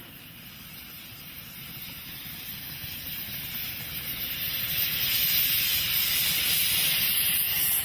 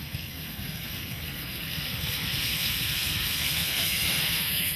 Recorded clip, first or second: first